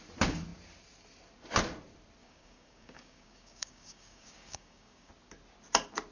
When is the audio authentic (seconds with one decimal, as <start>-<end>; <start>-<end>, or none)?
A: 0.0-2.2; 5.1-6.1